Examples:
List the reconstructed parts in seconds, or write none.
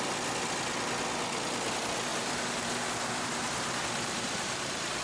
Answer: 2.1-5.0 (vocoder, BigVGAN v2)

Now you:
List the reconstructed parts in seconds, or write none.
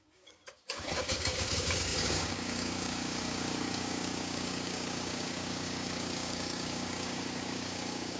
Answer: 0.0-8.2 (codec, DAC)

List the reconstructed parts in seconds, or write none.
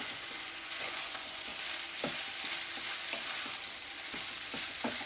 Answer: 0.0-1.5 (vocoder, Vocos); 4.6-5.1